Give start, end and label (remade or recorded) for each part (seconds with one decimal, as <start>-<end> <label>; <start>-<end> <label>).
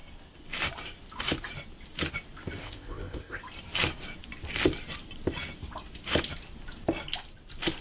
0.0-2.6 recorded; 2.6-3.4 remade; 3.4-7.8 recorded